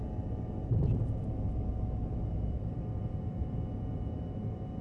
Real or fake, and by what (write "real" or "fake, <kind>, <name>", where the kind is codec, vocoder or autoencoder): fake, vocoder, BigVGAN v2